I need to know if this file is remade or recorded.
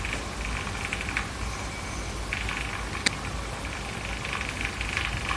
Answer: recorded